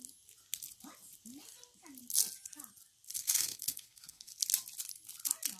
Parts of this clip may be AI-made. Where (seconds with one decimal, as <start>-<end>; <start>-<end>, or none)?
3.2-4.3